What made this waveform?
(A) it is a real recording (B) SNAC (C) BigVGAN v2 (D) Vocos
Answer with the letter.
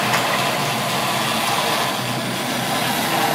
A